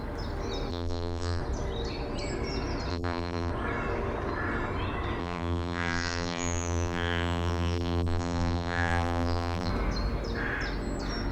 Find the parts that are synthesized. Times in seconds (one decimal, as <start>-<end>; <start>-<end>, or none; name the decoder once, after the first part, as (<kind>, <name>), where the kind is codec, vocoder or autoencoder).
0.7-1.4 (vocoder, BigVGAN v2); 2.9-3.5; 5.2-9.7